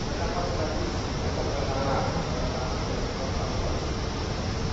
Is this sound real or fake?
real